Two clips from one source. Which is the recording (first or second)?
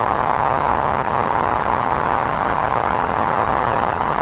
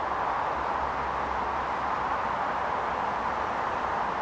second